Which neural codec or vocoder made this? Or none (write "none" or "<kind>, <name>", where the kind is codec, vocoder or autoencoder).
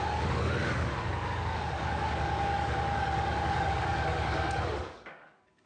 codec, DAC